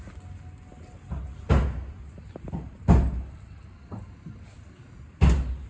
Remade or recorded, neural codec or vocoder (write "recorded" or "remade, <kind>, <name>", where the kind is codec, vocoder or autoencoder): recorded